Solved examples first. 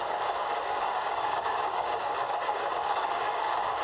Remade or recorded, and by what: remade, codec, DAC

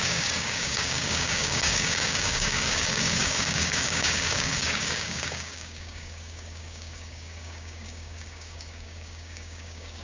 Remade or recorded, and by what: remade, codec, DAC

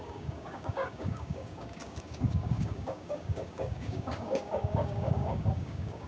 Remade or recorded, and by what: remade, codec, DAC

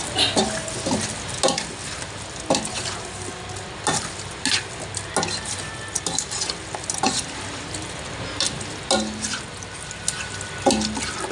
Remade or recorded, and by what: recorded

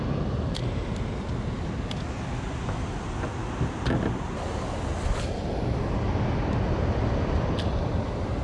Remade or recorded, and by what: recorded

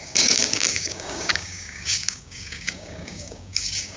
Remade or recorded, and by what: remade, codec, DAC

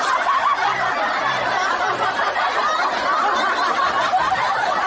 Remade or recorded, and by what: recorded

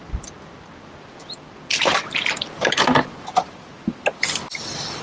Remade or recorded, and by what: recorded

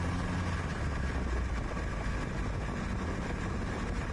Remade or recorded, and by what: recorded